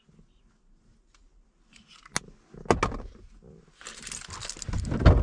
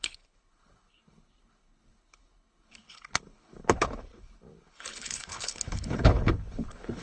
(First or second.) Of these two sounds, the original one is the first